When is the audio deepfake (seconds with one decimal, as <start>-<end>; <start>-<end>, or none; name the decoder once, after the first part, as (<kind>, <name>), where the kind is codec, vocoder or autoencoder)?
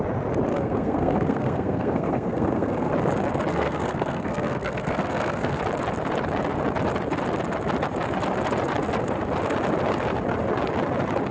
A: 0.5-2.9 (codec, SNAC); 3.5-5.6